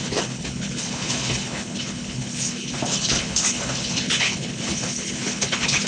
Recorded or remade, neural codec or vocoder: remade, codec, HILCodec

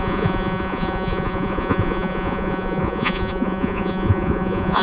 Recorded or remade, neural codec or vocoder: remade, vocoder, Vocos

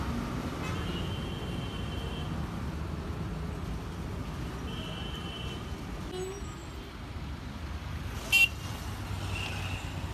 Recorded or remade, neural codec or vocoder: recorded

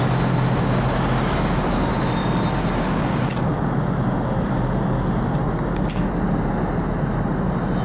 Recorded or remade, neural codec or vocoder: recorded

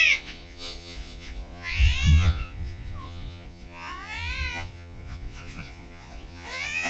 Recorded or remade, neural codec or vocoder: remade, vocoder, Vocos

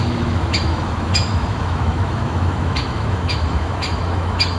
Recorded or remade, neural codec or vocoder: remade, autoencoder, DAC-VAE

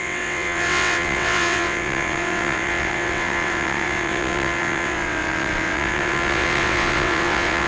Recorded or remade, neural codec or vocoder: remade, vocoder, WaveNeXt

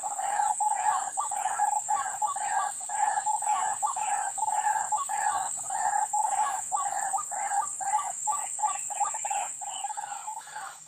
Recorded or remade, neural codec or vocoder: remade, codec, DAC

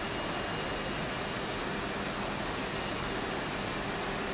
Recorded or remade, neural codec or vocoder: recorded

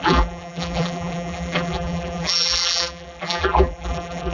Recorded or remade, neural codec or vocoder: remade, vocoder, BigVGAN v2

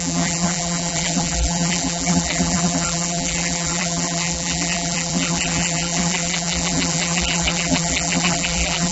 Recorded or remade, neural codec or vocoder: remade, vocoder, BigVGAN v2